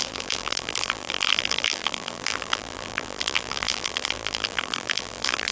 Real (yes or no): no